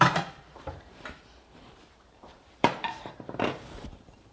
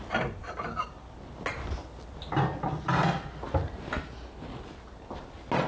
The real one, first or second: second